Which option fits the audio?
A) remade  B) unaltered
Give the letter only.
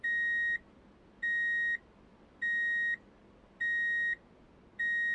B